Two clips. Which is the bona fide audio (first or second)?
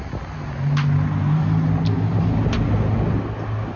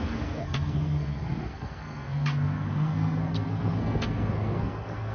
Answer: first